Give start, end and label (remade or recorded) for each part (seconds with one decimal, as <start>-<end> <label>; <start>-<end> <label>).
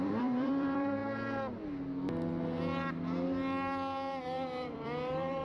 0.0-1.0 remade; 1.0-4.2 recorded; 4.2-5.4 remade